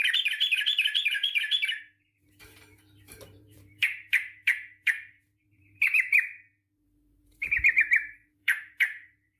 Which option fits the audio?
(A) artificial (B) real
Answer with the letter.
A